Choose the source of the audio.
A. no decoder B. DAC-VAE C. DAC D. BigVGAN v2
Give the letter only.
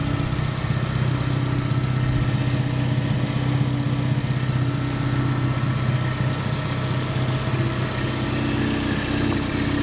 A